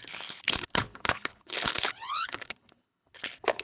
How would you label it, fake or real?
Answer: fake